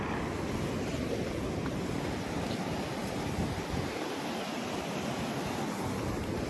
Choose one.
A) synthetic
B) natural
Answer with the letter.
B